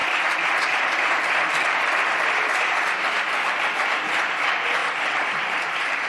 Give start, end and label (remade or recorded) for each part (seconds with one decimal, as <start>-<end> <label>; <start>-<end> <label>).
0.0-3.0 remade; 3.0-4.8 recorded; 4.8-6.1 remade

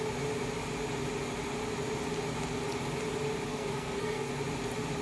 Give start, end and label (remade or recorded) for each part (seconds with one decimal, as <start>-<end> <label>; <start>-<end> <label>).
0.0-3.5 recorded; 3.5-4.3 remade; 4.3-5.0 recorded

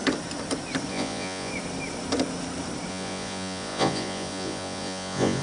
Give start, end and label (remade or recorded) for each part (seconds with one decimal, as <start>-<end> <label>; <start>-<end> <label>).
0.0-0.9 recorded; 0.9-1.5 remade; 1.5-2.9 recorded; 2.9-5.4 remade

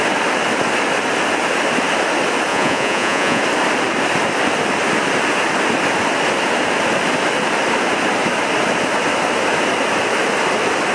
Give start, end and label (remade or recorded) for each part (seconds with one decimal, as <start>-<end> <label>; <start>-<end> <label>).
0.0-2.5 recorded; 2.5-3.4 remade; 3.4-10.9 recorded